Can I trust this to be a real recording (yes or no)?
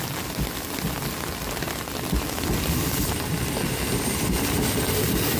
yes